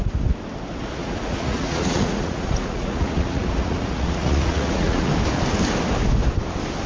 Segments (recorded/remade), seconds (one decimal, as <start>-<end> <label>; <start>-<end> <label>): 0.0-1.0 recorded; 1.0-5.1 remade; 5.1-6.9 recorded